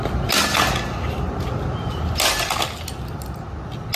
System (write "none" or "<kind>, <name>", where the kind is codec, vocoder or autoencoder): none